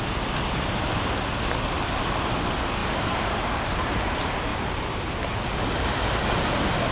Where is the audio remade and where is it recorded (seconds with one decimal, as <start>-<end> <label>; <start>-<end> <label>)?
0.0-2.8 recorded; 2.8-4.0 remade; 4.0-4.5 recorded; 4.5-5.0 remade; 5.0-6.9 recorded